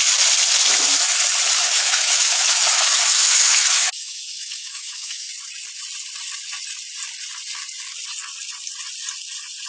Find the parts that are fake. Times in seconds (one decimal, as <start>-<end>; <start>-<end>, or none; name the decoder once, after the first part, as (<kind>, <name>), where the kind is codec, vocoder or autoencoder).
1.6-5.3 (autoencoder, DAC-VAE)

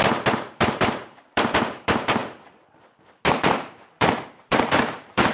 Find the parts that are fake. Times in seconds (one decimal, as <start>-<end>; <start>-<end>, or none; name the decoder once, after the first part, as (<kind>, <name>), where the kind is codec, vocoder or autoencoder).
0.6-2.2 (vocoder, BigVGAN v2); 3.3-5.3